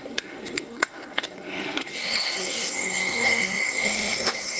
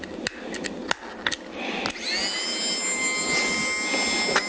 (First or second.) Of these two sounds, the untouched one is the second